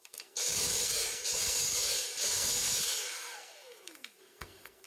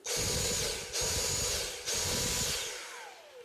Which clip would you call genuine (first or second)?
second